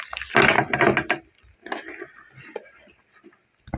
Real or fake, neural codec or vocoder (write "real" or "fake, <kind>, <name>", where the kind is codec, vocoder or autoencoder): real